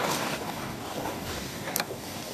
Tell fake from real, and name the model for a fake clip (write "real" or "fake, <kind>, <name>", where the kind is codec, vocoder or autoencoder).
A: fake, codec, DAC